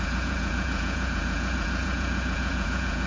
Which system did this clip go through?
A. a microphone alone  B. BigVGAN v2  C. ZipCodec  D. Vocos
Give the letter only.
D